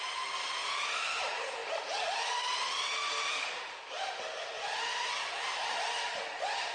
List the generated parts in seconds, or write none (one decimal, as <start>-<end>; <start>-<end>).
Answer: none